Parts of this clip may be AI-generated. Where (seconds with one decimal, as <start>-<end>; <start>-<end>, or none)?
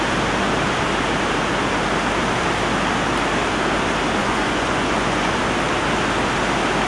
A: 4.2-5.4